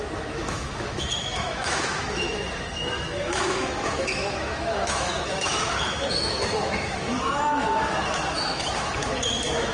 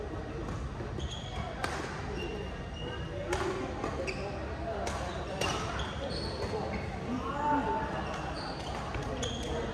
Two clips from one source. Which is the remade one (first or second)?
first